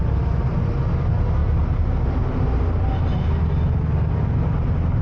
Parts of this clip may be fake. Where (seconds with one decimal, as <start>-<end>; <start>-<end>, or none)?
none